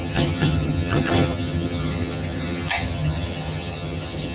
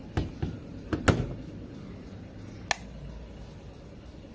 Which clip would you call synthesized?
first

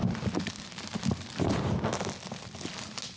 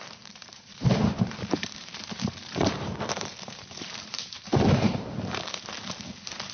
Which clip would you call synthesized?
second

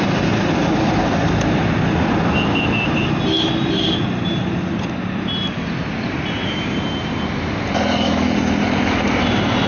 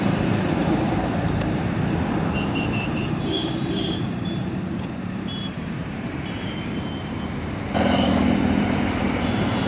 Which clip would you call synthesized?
second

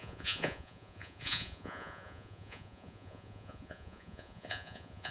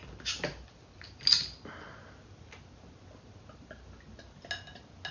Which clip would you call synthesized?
first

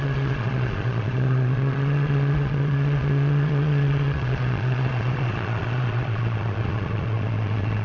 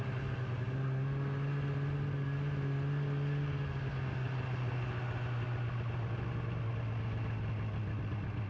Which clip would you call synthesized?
first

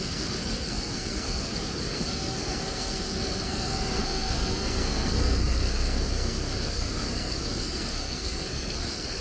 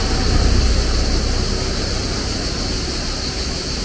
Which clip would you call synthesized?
first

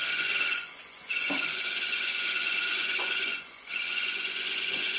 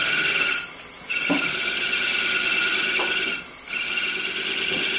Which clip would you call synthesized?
first